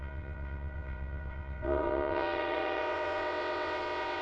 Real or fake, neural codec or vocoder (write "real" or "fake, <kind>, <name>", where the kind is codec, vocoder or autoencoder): fake, vocoder, WaveNeXt